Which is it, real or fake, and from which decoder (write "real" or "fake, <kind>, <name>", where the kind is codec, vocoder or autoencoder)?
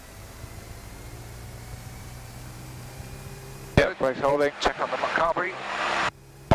fake, vocoder, BigVGAN v2